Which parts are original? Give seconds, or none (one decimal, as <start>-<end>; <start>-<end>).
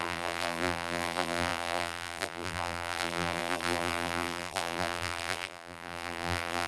none